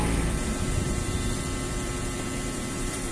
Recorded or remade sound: remade